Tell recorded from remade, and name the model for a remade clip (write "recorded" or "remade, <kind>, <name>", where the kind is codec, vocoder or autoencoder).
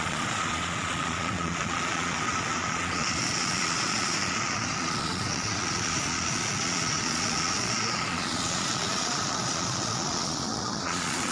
remade, vocoder, Vocos